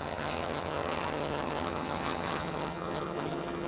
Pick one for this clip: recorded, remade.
remade